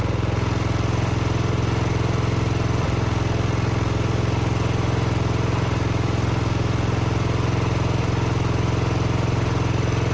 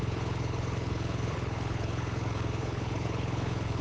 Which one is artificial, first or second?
second